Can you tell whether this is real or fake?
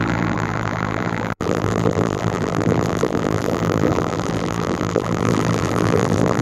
fake